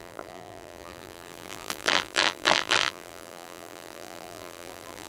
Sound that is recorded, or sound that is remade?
remade